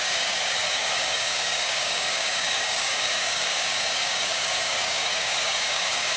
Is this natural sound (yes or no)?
no